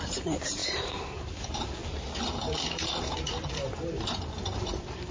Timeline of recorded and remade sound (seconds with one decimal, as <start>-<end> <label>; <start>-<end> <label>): 0.0-1.8 remade; 1.8-3.5 recorded; 3.5-5.1 remade